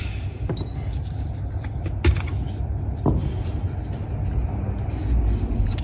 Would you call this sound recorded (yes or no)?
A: yes